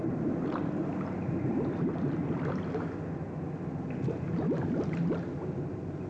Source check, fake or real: real